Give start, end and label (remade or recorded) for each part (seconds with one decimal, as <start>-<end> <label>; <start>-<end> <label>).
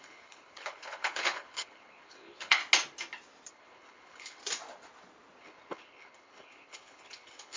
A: 0.0-2.6 remade; 2.6-3.5 recorded; 3.5-4.4 remade; 4.4-5.4 recorded; 5.4-7.6 remade